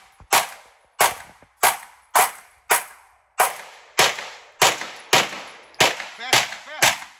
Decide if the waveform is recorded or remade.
recorded